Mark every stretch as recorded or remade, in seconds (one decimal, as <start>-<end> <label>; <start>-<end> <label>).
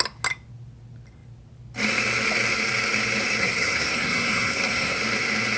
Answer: 0.0-3.4 recorded; 3.4-5.0 remade; 5.0-5.6 recorded